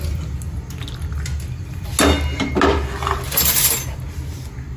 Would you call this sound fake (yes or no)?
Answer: no